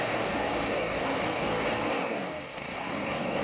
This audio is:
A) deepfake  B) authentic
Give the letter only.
A